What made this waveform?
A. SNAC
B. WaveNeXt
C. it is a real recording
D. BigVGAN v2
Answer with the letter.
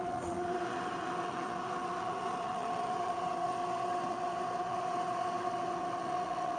B